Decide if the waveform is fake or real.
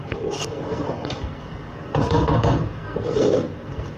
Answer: fake